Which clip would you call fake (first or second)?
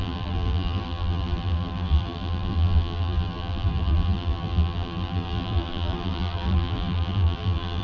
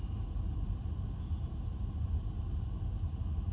first